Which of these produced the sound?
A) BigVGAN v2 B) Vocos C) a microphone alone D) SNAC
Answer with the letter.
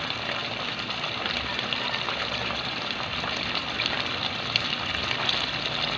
C